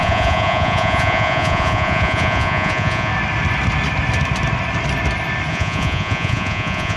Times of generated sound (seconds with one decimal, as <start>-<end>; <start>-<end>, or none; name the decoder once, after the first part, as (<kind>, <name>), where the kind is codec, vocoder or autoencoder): 0.0-3.1 (vocoder, Vocos); 5.5-7.0